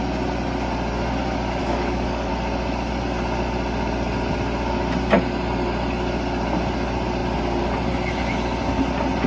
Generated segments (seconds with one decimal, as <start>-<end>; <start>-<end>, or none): 1.6-2.3